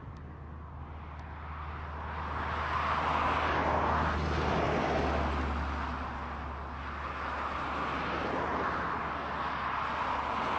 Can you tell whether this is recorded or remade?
recorded